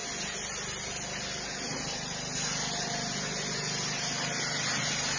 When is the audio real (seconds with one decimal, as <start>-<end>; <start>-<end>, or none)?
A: 0.0-5.2

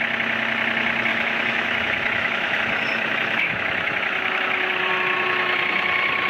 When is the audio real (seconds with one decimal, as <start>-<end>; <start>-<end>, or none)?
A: 0.0-1.1; 4.9-6.3

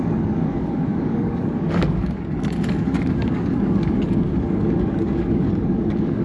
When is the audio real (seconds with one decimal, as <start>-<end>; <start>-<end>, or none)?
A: none

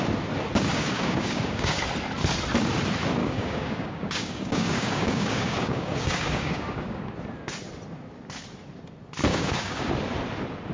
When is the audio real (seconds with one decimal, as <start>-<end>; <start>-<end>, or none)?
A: 0.0-0.7; 1.8-3.2; 7.0-9.3; 9.9-10.7

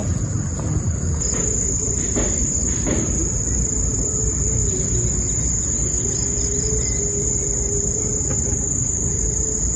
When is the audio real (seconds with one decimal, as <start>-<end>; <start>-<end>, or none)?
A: 0.0-1.6; 4.6-7.3

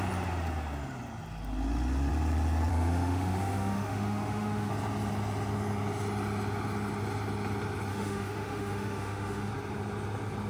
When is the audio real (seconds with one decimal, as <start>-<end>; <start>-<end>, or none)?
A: 0.0-2.7; 4.7-7.9; 9.5-10.5

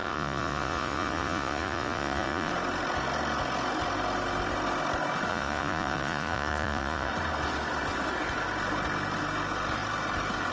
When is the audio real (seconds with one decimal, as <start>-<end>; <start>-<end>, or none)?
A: 2.5-5.3; 7.1-10.5

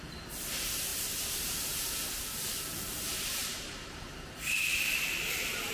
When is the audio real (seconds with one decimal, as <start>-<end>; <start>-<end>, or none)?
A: none